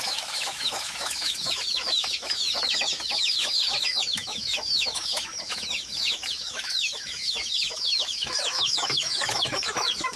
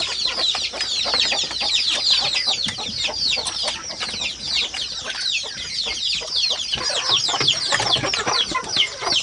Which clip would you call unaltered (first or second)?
second